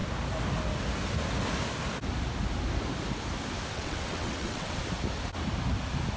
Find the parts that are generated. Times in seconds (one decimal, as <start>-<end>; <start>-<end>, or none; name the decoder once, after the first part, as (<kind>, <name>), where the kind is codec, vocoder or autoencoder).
3.7-4.8 (vocoder, WaveNeXt)

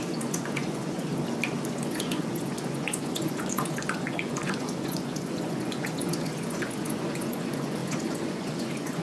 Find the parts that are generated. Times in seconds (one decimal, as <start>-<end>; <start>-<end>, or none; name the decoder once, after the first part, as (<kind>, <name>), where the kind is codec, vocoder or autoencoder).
0.0-1.1 (vocoder, Vocos); 1.7-9.0

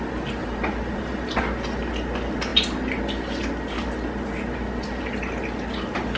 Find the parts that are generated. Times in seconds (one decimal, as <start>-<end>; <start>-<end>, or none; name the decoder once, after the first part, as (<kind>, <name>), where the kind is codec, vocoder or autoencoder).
0.4-1.4 (vocoder, BigVGAN v2)

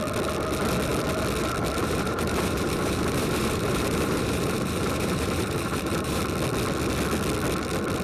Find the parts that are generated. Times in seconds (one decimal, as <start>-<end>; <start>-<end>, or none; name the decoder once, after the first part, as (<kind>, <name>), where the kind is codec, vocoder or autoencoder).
1.8-6.2 (vocoder, BigVGAN v2)